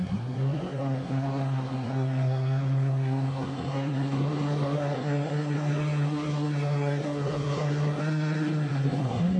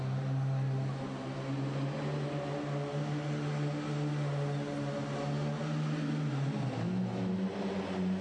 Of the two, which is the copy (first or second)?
first